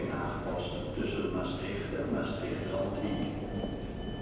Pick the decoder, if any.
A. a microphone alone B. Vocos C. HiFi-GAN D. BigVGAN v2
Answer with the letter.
A